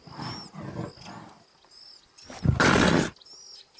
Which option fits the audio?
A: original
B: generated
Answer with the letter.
A